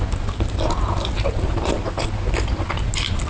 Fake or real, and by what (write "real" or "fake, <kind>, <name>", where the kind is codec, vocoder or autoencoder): real